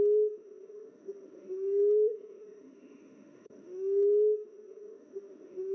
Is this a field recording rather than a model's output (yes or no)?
no